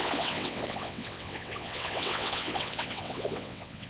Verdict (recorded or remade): remade